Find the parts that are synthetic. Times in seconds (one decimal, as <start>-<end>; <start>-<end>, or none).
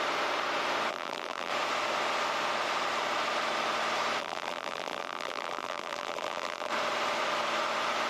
0.9-1.5; 4.2-6.7